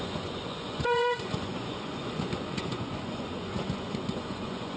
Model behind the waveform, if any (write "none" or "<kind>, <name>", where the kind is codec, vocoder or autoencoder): vocoder, Vocos